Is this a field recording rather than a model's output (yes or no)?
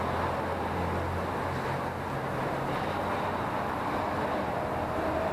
yes